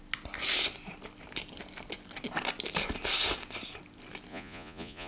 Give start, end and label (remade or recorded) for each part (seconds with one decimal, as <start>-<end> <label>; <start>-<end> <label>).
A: 0.0-4.3 recorded; 4.3-5.1 remade